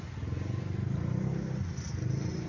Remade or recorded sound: recorded